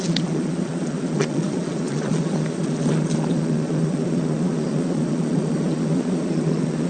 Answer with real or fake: fake